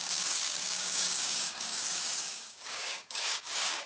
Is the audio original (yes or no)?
no